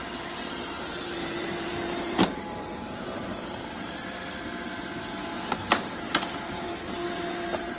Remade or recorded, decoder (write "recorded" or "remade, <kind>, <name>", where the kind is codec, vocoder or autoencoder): remade, vocoder, BigVGAN v2